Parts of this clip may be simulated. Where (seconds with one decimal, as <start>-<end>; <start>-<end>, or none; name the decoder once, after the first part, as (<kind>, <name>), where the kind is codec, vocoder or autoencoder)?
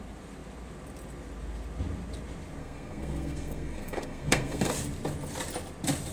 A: 2.6-4.7 (codec, SNAC)